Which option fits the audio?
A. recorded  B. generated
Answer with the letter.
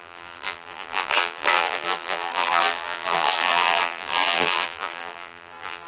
B